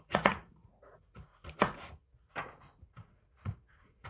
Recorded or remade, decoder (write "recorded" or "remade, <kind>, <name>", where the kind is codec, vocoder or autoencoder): remade, vocoder, Vocos